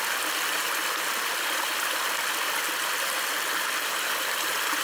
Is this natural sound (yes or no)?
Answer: yes